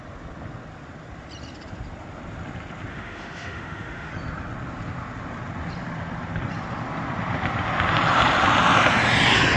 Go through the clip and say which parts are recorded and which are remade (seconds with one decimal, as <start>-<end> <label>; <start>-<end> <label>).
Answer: 0.0-2.9 recorded; 2.9-4.1 remade; 4.1-9.6 recorded